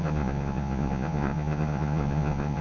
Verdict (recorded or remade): remade